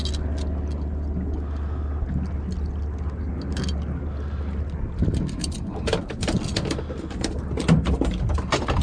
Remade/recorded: recorded